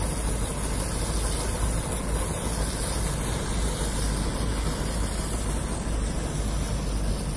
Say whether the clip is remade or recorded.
recorded